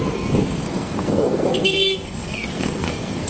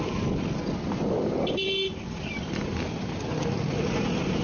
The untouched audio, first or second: second